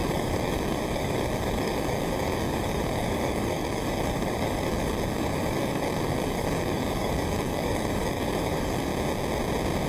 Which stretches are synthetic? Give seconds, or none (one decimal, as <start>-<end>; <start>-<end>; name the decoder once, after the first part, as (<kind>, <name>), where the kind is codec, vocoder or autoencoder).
0.0-8.9 (codec, DAC)